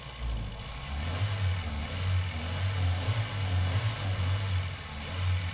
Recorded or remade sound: recorded